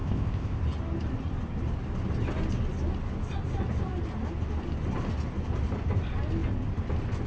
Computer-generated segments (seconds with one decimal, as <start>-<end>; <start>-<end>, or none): 0.0-0.6